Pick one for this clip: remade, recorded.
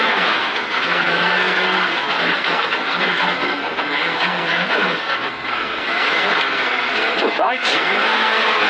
remade